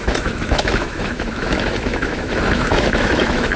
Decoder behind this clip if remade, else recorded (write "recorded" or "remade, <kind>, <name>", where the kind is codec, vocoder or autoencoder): remade, autoencoder, DAC-VAE